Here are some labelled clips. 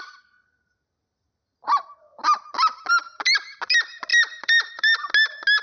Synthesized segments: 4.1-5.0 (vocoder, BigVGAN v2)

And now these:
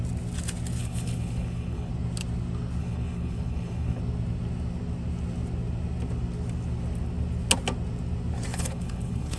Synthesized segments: 0.8-1.9 (codec, HILCodec); 2.8-4.0; 8.5-9.4

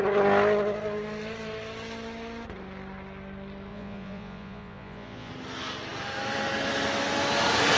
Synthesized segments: 3.7-5.3 (vocoder, Vocos)

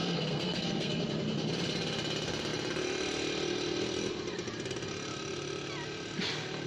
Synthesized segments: 0.0-1.0 (codec, SNAC)

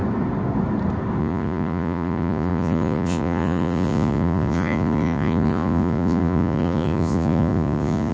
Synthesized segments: 1.2-8.1 (vocoder, Vocos)

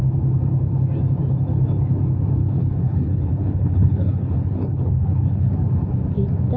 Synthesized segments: 2.4-5.5 (codec, HILCodec)

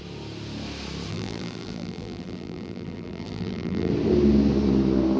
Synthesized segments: 1.1-3.9 (vocoder, BigVGAN v2)